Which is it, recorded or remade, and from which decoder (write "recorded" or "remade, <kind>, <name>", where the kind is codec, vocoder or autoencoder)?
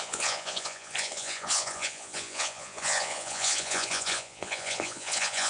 remade, vocoder, Vocos